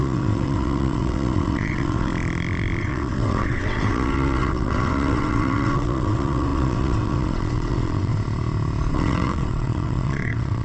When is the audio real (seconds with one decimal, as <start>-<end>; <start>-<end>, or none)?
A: 2.1-2.8; 8.1-8.9

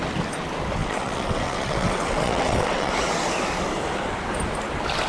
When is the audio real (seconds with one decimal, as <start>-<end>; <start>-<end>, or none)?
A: 0.0-0.8; 2.9-5.1

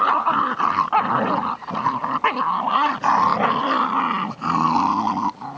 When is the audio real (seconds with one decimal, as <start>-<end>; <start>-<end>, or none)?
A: 0.0-5.6

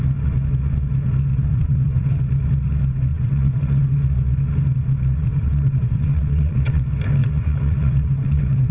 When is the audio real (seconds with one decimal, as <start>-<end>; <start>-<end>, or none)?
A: 0.0-1.3; 2.2-3.1; 3.8-5.2; 6.8-7.2

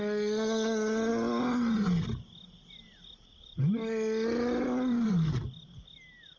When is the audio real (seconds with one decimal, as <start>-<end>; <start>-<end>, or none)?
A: 0.0-6.4

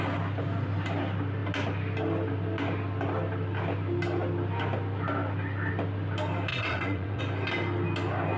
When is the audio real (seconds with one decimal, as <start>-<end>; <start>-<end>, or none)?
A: 0.0-6.5; 7.2-8.4